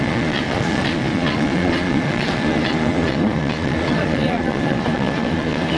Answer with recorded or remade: remade